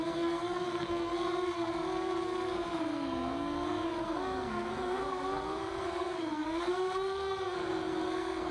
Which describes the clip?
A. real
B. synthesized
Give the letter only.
B